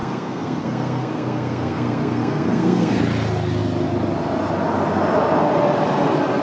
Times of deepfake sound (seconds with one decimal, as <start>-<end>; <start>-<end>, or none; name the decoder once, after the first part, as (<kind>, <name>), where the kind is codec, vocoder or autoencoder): 0.0-3.0 (codec, SNAC)